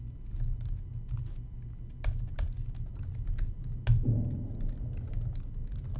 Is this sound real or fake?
real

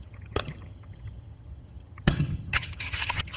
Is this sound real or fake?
fake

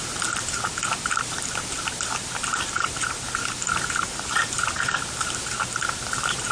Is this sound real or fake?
fake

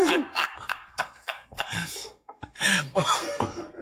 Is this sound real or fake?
fake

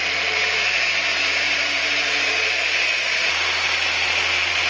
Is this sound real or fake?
fake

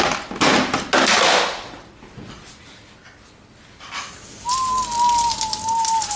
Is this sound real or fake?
real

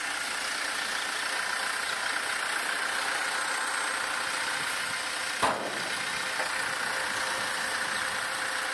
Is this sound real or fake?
real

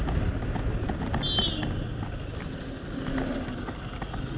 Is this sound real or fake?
real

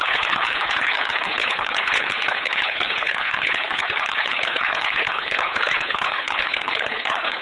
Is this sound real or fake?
fake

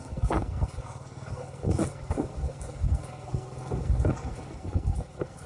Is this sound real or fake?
fake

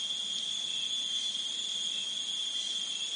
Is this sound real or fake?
real